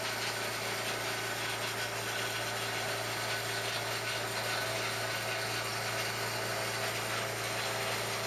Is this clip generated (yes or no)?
no